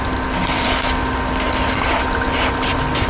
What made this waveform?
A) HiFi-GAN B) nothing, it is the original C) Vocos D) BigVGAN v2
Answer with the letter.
B